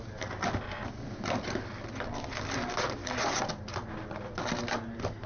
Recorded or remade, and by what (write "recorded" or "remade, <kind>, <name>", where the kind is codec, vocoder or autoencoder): recorded